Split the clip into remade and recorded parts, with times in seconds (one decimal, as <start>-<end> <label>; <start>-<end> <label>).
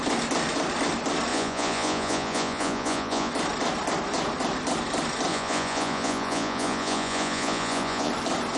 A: 0.0-1.3 recorded; 1.3-3.3 remade; 3.3-5.3 recorded; 5.3-8.1 remade; 8.1-8.6 recorded